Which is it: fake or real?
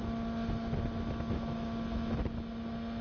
real